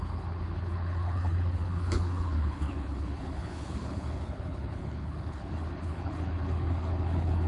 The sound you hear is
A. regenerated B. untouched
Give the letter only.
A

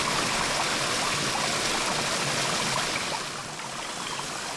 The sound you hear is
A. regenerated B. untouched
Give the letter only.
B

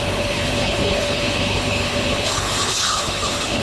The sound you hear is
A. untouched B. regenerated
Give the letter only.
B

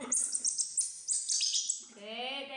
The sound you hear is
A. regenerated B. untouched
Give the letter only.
B